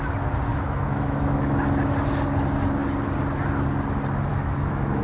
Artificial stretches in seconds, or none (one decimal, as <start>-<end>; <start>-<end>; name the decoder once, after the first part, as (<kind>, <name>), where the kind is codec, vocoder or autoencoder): 0.5-1.6 (autoencoder, DAC-VAE); 4.3-5.0

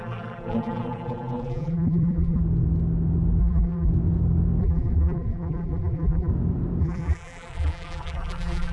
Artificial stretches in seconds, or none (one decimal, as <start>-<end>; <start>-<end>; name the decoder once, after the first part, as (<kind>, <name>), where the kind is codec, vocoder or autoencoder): 0.0-2.4 (vocoder, BigVGAN v2); 3.4-3.9; 4.6-6.3; 6.8-8.7

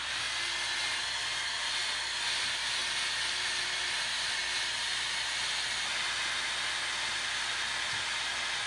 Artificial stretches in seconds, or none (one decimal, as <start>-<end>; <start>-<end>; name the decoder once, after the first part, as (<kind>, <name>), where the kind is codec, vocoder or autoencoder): none

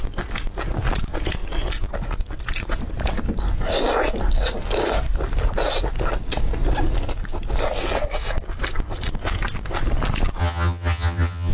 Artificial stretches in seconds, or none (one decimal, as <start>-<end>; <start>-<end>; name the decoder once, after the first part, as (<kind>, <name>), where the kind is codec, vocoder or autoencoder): 10.4-11.5 (vocoder, HiFi-GAN)

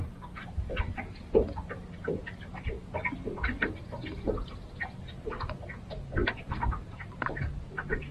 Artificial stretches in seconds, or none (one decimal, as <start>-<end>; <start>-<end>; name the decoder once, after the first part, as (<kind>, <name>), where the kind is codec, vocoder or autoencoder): 6.2-8.1 (vocoder, BigVGAN v2)

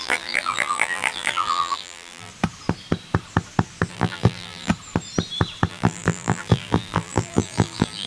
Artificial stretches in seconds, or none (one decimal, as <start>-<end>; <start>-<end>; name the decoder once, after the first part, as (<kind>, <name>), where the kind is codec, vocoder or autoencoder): 0.0-2.3 (vocoder, BigVGAN v2); 3.9-4.7; 5.7-8.1

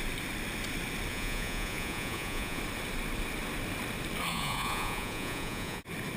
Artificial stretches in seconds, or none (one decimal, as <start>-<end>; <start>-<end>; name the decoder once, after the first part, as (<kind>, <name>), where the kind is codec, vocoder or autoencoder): 1.1-2.6 (vocoder, Vocos); 4.3-5.8

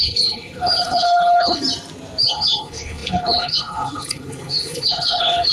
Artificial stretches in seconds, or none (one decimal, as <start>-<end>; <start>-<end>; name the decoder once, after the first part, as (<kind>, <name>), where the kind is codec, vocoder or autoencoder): 0.0-1.6 (codec, HILCodec); 2.2-5.5